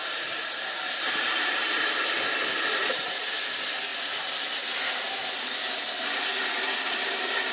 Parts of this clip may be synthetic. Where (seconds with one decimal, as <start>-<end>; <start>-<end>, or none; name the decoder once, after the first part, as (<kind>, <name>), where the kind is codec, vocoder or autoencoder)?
0.0-2.1 (vocoder, BigVGAN v2); 2.8-3.4